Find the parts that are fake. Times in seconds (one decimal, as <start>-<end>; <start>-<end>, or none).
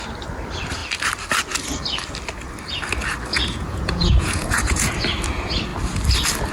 3.3-4.9